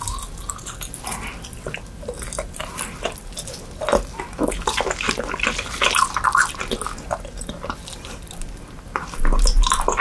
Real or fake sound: real